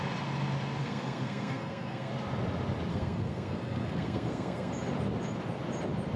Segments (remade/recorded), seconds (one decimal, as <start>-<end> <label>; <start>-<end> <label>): 0.0-0.8 recorded; 0.8-2.1 remade; 2.1-2.9 recorded; 2.9-4.7 remade; 4.7-6.2 recorded